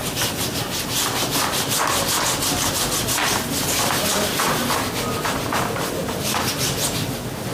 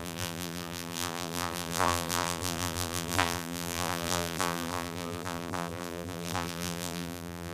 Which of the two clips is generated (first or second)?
second